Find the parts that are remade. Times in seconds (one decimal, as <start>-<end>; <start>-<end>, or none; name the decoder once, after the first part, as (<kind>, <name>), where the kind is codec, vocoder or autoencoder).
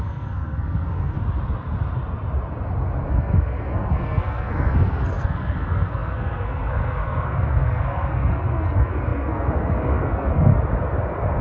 0.0-1.2 (codec, SNAC); 3.1-10.5